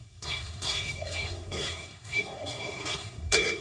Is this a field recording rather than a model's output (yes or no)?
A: no